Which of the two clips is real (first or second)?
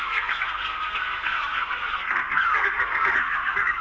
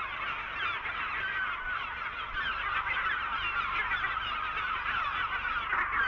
second